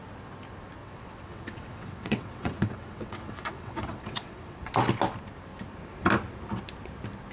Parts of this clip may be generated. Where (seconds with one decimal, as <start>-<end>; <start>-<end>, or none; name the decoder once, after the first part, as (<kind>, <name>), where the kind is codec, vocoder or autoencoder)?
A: 0.8-4.7 (vocoder, WaveNeXt)